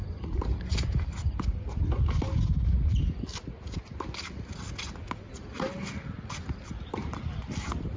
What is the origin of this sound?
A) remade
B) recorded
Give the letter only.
B